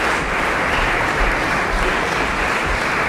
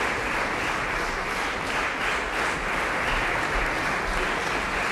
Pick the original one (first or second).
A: second